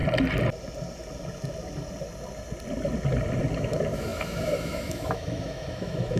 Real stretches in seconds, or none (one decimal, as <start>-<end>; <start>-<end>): 0.0-3.6